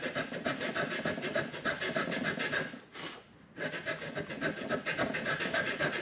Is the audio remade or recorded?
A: recorded